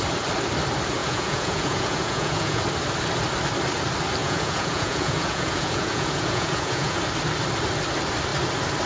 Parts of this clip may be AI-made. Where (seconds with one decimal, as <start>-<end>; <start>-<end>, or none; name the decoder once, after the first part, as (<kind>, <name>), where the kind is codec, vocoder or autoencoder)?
1.0-2.6 (vocoder, Vocos); 4.2-7.0